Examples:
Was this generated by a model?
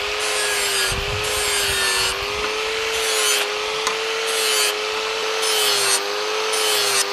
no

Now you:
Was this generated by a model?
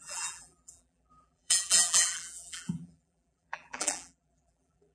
yes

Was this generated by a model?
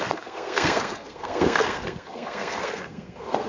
yes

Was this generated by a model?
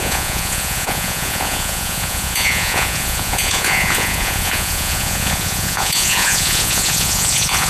yes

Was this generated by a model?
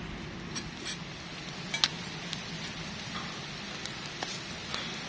no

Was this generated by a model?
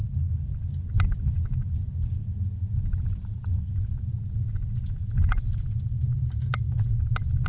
no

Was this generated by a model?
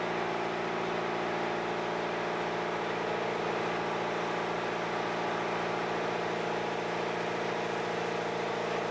no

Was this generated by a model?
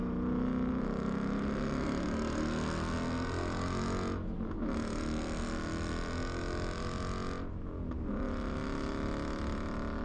no